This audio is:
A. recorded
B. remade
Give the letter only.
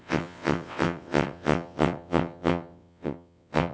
B